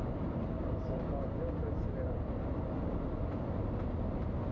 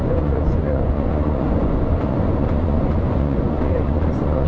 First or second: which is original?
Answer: first